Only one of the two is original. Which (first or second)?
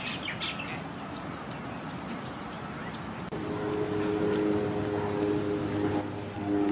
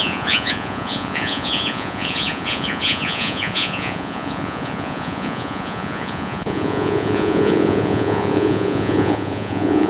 first